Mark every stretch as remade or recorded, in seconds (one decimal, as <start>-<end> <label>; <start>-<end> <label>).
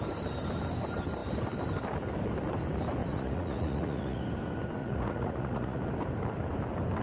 0.0-3.0 recorded; 3.0-4.2 remade; 4.2-4.8 recorded; 4.8-5.8 remade; 5.8-7.0 recorded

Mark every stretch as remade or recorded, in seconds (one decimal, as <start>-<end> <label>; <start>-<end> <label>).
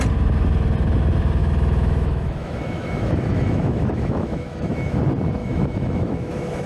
0.0-1.4 recorded; 1.4-5.0 remade; 5.0-5.4 recorded; 5.4-6.7 remade